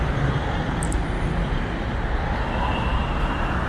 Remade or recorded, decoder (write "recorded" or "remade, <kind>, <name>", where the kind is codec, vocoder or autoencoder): recorded